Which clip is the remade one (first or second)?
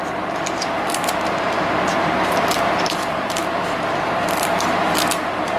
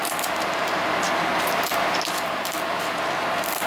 first